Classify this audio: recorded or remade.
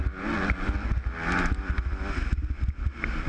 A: recorded